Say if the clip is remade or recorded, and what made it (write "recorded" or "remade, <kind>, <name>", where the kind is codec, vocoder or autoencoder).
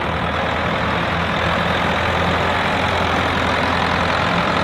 recorded